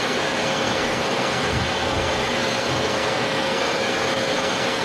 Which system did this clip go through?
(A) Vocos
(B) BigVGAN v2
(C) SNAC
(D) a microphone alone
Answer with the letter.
C